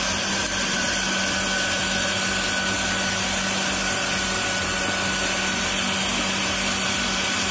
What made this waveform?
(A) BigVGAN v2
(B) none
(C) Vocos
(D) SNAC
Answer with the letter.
B